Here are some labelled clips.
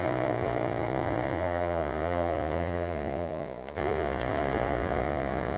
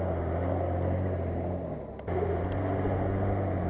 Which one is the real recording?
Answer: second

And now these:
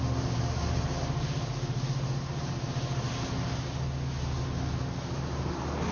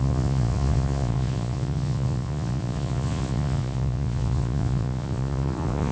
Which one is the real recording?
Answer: first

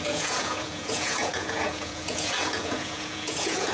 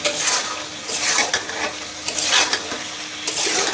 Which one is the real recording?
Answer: second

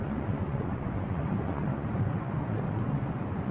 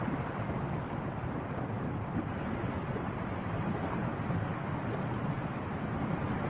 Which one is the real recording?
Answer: second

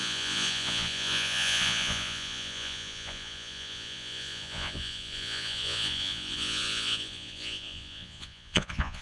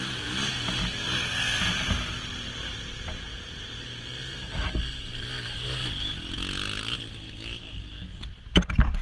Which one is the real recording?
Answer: second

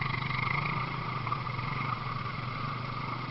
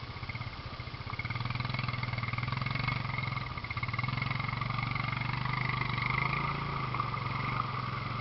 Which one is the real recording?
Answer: second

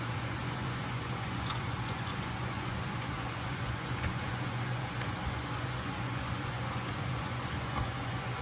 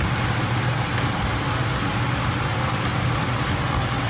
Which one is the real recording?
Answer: second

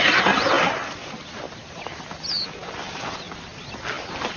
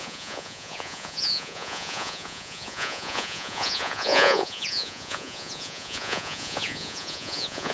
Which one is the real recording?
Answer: first